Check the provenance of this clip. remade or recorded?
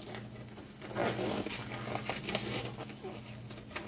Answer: recorded